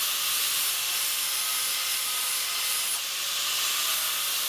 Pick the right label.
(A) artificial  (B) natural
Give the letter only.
B